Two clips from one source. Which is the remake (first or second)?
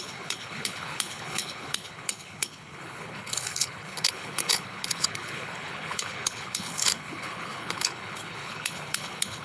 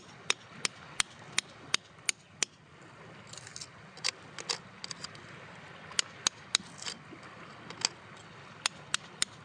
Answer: first